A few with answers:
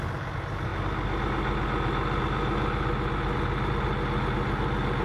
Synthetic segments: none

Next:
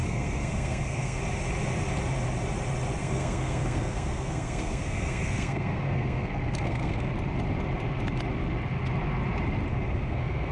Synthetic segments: 0.0-1.2 (codec, SNAC); 3.0-7.1; 9.7-10.5

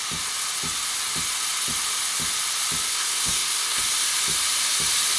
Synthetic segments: 2.9-3.8 (codec, SNAC)

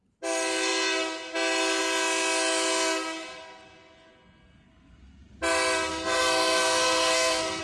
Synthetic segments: 5.9-7.6 (codec, SNAC)

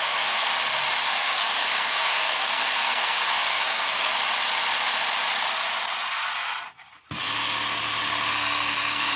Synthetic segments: 0.0-0.5 (codec, SNAC); 1.0-4.1; 8.3-9.2

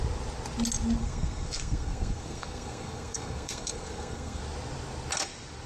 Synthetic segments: 1.0-4.4 (codec, SNAC)

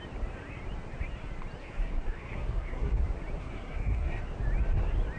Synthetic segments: 1.6-3.0 (codec, SNAC); 3.4-4.2

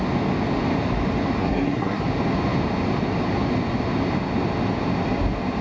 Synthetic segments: 1.4-2.0 (codec, SNAC)